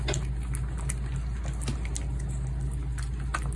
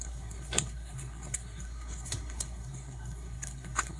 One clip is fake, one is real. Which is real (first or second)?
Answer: first